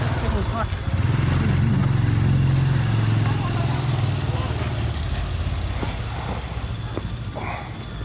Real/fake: real